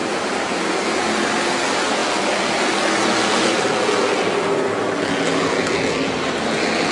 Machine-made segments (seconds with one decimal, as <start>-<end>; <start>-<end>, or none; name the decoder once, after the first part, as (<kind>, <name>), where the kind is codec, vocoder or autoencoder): none